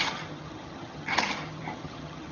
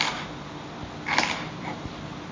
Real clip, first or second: second